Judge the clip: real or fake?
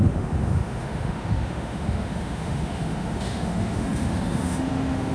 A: fake